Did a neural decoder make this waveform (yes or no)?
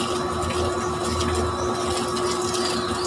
no